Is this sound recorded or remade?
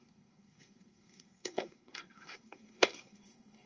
remade